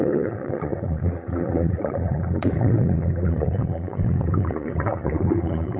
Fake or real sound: fake